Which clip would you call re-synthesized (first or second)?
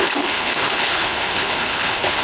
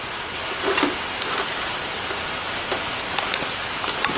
first